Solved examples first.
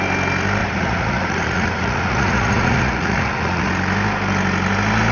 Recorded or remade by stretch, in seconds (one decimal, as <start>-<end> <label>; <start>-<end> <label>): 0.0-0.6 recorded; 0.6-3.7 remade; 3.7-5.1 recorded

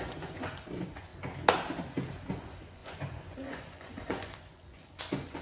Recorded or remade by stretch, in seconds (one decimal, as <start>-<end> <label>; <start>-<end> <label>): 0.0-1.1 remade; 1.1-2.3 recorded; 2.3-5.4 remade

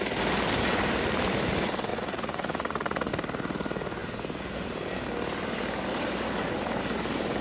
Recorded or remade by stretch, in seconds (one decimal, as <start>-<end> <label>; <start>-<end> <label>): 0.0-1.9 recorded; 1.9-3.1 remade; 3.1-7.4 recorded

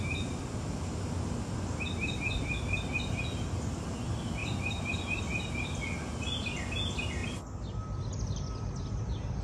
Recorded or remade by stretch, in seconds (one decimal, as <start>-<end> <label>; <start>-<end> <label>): 0.0-9.4 recorded

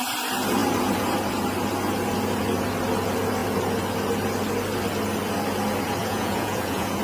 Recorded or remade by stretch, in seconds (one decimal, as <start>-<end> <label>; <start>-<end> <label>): 0.0-6.0 recorded; 6.0-7.0 remade